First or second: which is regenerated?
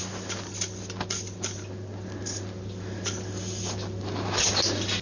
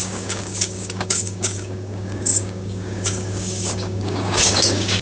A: second